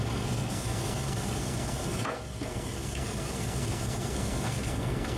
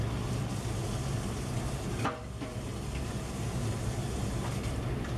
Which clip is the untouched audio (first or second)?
second